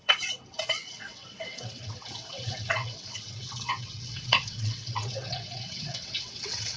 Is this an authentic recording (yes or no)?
no